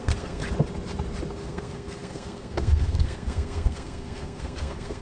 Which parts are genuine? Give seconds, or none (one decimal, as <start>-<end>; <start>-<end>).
0.4-1.3